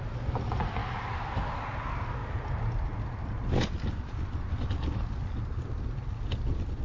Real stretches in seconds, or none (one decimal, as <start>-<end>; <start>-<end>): 0.0-6.8